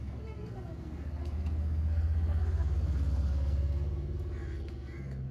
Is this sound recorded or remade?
remade